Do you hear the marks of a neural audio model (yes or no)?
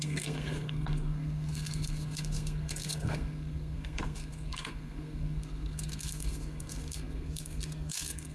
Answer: yes